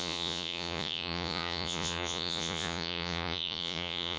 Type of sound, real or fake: fake